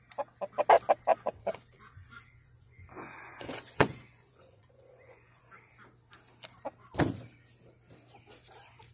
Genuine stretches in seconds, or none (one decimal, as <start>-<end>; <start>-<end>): 0.0-1.1; 5.4-8.9